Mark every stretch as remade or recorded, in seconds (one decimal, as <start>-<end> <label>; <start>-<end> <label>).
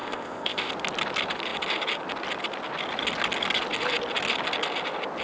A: 0.0-0.7 remade; 0.7-5.2 recorded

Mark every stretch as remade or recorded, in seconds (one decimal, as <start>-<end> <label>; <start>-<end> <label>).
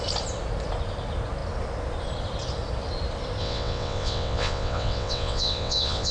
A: 0.0-3.4 recorded; 3.4-6.1 remade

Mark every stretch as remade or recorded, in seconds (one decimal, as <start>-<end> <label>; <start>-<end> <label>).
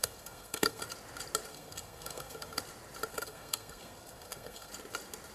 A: 0.0-0.8 remade; 0.8-1.5 recorded; 1.5-2.6 remade; 2.6-3.1 recorded; 3.1-4.7 remade; 4.7-5.3 recorded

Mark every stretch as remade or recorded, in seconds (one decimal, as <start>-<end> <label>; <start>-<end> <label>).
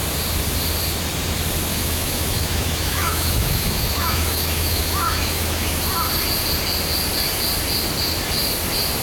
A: 0.0-1.7 recorded; 1.7-5.8 remade; 5.8-9.0 recorded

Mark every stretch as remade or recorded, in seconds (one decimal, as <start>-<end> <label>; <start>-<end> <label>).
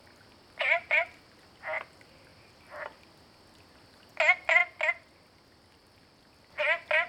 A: 0.0-7.1 recorded